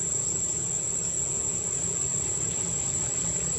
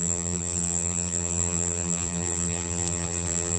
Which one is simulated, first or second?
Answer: second